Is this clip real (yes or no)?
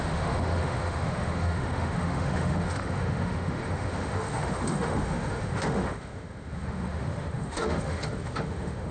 no